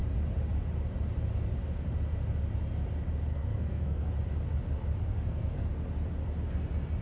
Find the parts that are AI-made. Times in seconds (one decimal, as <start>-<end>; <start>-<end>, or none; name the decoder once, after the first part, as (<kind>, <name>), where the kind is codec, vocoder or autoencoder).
3.3-4.1 (codec, SNAC); 5.1-5.7